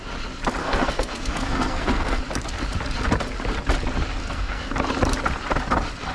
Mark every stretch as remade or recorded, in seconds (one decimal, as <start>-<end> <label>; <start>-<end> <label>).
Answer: 0.0-0.6 recorded; 0.6-2.2 remade; 2.2-4.2 recorded; 4.2-4.7 remade; 4.7-6.1 recorded